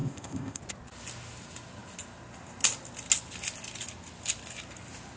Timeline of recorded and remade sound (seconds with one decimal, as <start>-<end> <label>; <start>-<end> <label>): 0.0-0.6 remade; 0.6-5.2 recorded